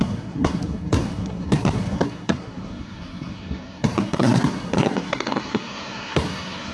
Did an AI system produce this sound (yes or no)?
yes